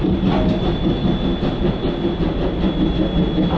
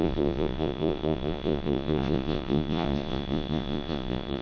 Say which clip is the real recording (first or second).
first